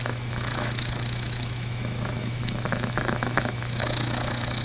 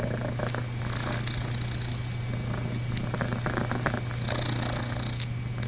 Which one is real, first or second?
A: second